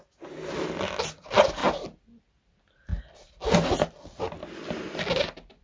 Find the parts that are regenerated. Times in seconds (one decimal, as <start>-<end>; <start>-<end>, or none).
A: none